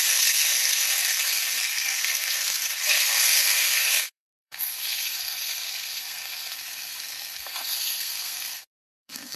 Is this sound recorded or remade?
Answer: remade